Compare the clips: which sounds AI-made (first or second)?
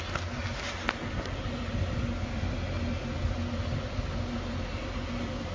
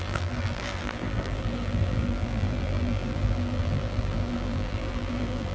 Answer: second